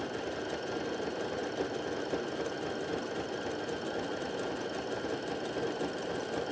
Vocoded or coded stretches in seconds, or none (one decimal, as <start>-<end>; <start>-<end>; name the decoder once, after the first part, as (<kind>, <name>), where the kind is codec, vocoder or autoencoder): none